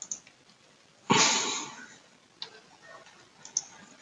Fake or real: real